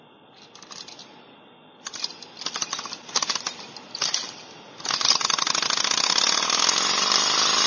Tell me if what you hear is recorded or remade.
recorded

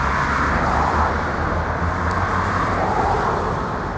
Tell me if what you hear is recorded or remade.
recorded